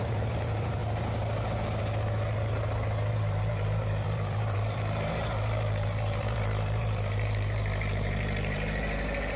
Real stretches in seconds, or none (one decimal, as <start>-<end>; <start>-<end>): 0.8-3.1